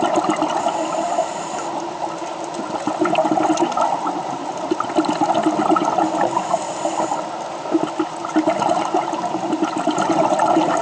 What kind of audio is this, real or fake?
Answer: real